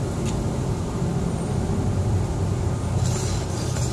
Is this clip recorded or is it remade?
recorded